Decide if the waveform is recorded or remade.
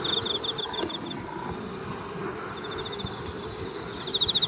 recorded